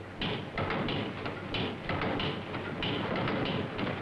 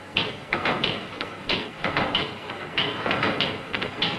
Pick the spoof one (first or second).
second